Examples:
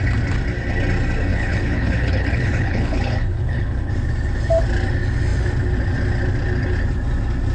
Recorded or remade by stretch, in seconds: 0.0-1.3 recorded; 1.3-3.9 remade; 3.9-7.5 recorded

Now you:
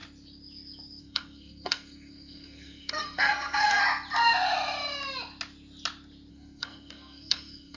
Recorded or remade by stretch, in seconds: 0.0-1.0 recorded; 1.0-3.8 remade; 3.8-6.3 recorded; 6.3-7.8 remade

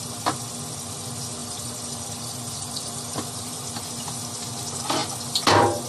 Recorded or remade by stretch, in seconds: 0.0-1.4 recorded; 1.4-3.8 remade; 3.8-5.9 recorded

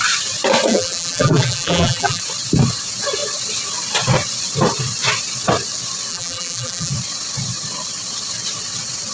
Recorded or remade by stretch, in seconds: 0.0-0.7 recorded; 0.7-2.2 remade; 2.2-6.1 recorded; 6.1-6.9 remade; 6.9-9.1 recorded

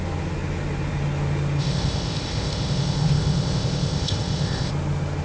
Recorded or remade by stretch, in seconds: 0.0-1.6 recorded; 1.6-4.7 remade; 4.7-5.2 recorded

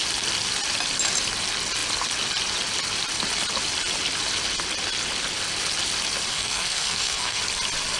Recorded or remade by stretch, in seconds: 0.0-6.3 recorded; 6.3-7.4 remade; 7.4-8.0 recorded

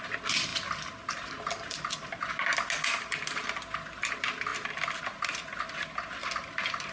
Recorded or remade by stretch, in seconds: 0.0-6.9 recorded

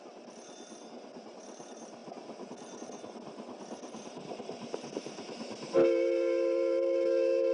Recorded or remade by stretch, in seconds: 0.0-7.5 recorded